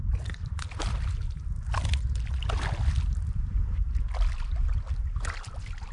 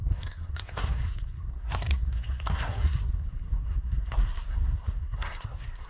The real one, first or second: first